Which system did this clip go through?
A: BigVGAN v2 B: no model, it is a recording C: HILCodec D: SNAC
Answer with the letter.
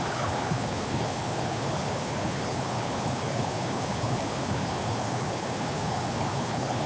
C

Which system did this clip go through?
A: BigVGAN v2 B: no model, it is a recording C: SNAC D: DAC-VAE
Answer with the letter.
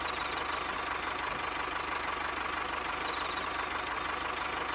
B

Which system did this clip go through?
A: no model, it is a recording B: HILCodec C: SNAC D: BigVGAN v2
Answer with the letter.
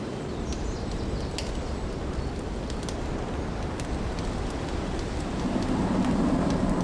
A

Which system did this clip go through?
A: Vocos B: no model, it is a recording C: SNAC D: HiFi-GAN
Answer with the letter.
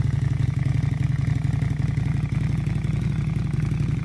B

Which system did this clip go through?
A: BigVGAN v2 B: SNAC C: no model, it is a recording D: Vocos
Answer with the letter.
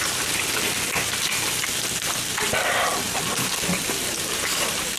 C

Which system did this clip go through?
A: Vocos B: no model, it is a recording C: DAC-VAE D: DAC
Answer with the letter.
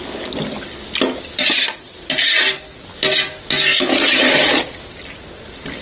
B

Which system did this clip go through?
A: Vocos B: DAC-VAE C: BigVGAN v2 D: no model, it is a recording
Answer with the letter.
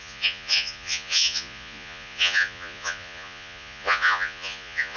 A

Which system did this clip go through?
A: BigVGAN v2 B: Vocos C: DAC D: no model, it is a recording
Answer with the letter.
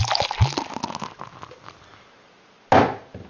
D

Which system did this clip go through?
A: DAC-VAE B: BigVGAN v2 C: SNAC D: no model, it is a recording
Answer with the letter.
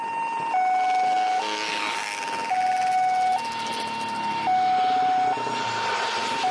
D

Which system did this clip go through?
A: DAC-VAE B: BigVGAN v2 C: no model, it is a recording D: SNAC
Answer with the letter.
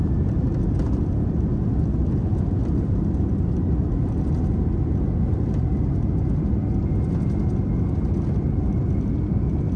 C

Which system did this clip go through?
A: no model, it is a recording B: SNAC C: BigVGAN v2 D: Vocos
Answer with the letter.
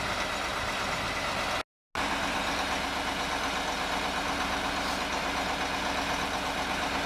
A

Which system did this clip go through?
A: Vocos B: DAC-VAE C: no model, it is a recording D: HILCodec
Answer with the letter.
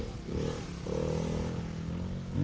C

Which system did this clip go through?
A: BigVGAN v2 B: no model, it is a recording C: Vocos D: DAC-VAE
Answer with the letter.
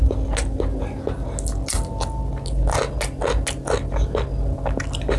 B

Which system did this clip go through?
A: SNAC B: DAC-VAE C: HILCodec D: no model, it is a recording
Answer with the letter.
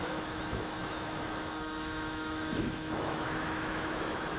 B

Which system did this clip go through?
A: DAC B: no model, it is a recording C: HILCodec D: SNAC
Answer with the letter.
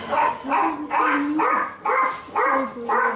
B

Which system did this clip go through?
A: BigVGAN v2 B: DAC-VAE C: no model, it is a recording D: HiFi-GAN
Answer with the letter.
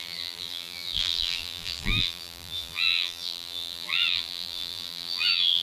A